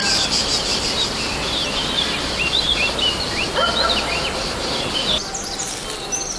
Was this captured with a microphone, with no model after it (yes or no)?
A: yes